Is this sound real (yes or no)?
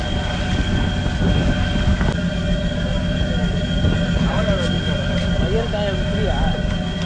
yes